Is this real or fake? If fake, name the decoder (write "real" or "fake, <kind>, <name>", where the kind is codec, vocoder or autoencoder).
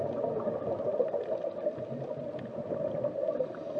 real